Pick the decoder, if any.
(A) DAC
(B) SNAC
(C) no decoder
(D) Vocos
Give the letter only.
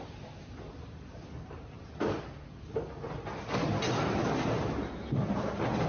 C